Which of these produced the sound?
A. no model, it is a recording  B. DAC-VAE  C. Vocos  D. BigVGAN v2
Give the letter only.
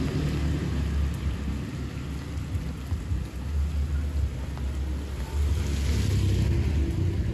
A